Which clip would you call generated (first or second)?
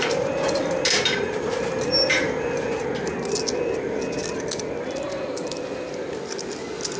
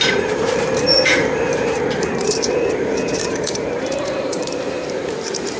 second